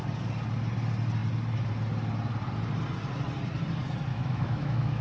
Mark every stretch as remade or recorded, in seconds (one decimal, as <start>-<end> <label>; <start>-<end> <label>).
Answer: 0.0-4.1 recorded; 4.1-5.0 remade